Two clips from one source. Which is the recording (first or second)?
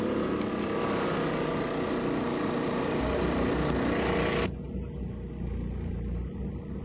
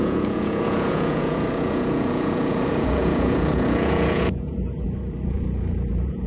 first